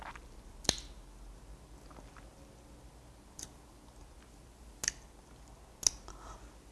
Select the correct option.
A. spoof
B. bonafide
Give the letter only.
B